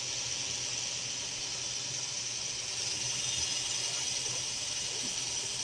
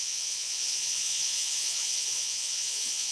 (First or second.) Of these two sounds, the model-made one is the second